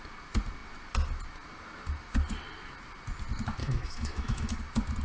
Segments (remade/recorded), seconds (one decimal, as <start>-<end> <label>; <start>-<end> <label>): 0.0-3.6 recorded; 3.6-4.6 remade; 4.6-5.0 recorded